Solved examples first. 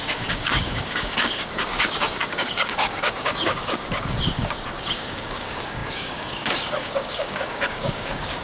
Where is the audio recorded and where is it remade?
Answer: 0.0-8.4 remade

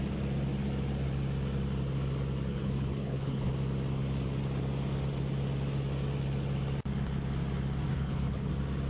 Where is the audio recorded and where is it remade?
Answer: 0.0-2.5 recorded; 2.5-3.5 remade; 3.5-7.9 recorded; 7.9-8.5 remade; 8.5-8.9 recorded

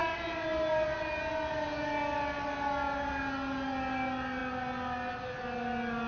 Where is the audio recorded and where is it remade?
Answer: 0.0-6.1 recorded

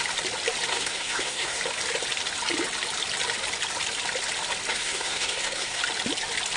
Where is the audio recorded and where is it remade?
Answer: 0.0-0.7 recorded; 0.7-1.6 remade; 1.6-4.7 recorded; 4.7-5.8 remade; 5.8-6.6 recorded

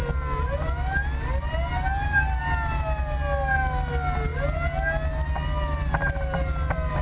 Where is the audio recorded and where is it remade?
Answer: 0.0-7.0 recorded